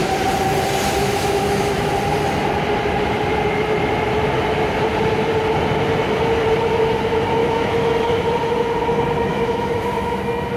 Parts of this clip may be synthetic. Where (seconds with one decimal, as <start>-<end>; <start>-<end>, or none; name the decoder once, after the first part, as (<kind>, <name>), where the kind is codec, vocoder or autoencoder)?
1.0-1.9 (autoencoder, DAC-VAE); 7.4-8.2; 9.3-10.2